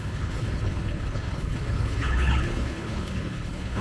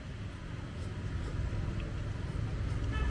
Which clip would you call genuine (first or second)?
second